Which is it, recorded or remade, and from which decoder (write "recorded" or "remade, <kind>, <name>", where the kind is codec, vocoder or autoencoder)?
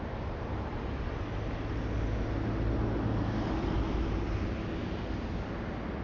recorded